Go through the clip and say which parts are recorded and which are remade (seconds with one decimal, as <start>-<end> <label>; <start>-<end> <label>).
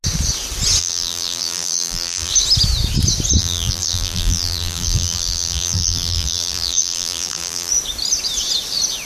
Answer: 0.0-0.8 recorded; 0.8-2.3 remade; 2.3-3.4 recorded; 3.4-7.7 remade; 7.7-9.1 recorded